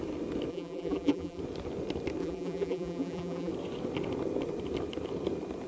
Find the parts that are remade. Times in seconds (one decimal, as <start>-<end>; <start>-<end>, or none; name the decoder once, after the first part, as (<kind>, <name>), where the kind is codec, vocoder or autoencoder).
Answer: 0.5-1.4 (vocoder, BigVGAN v2); 2.2-3.5

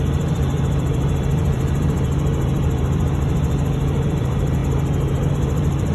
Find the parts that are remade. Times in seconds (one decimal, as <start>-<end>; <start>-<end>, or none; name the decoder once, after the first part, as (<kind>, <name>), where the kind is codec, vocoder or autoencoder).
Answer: 0.0-4.6 (vocoder, BigVGAN v2); 5.3-5.9

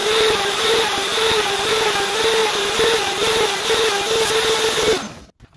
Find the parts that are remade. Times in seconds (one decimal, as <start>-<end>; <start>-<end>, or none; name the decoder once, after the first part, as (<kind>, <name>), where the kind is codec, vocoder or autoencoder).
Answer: 0.0-1.7 (vocoder, BigVGAN v2); 2.4-3.9

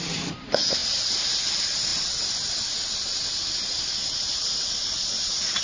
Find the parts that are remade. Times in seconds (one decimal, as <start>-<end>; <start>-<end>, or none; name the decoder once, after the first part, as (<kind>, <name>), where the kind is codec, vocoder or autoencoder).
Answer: 0.8-1.4 (vocoder, BigVGAN v2)